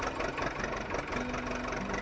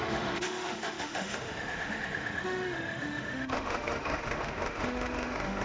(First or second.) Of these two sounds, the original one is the first